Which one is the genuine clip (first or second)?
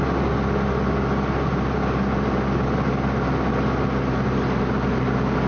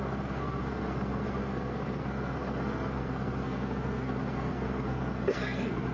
first